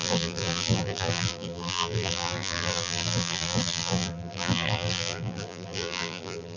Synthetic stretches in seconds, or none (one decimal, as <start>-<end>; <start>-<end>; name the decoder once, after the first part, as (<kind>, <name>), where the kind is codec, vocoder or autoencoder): 0.0-6.6 (vocoder, BigVGAN v2)